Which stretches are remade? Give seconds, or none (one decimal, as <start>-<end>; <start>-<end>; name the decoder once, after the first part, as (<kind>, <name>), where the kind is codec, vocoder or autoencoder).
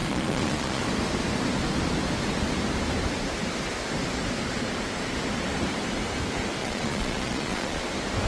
0.0-0.8 (vocoder, Vocos); 6.6-7.8